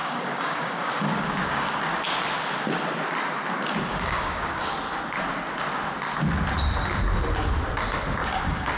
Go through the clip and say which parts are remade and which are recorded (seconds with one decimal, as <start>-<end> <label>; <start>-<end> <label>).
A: 0.0-1.8 remade; 1.8-3.9 recorded; 3.9-4.7 remade; 4.7-8.2 recorded; 8.2-8.8 remade